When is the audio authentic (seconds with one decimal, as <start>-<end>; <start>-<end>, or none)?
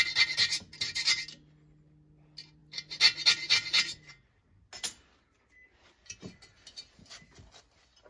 0.0-8.1